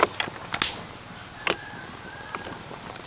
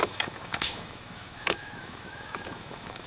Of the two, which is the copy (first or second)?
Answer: second